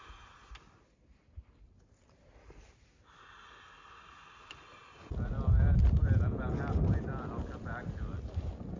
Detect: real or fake real